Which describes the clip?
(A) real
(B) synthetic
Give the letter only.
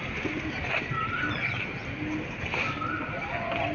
A